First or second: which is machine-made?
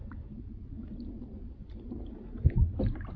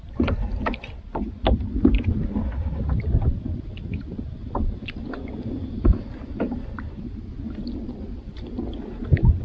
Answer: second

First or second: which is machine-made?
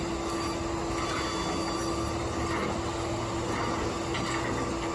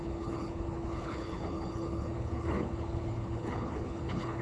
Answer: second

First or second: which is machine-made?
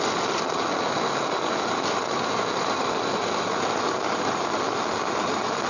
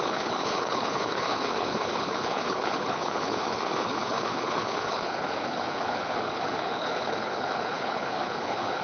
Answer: second